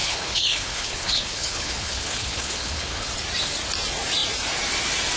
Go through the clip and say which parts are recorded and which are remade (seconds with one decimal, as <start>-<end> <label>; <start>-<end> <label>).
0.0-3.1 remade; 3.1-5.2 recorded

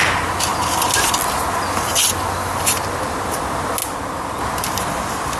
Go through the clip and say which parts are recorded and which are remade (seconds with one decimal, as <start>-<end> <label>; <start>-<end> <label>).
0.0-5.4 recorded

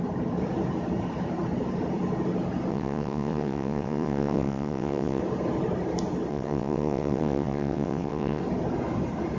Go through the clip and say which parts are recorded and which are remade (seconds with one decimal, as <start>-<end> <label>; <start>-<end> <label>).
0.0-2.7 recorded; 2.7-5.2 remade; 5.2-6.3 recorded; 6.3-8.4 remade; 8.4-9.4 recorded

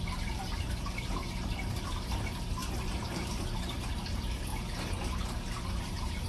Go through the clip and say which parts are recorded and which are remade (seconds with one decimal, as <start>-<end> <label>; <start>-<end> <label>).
0.0-4.5 remade; 4.5-5.8 recorded; 5.8-6.3 remade